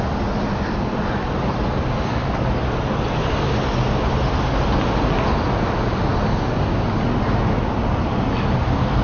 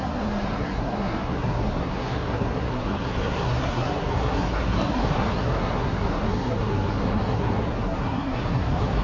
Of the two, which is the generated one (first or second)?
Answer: second